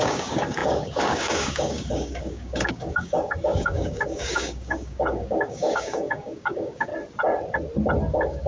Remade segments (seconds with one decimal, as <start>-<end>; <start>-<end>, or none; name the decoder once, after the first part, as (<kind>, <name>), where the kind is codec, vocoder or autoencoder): 0.0-6.9 (codec, DAC); 8.1-8.5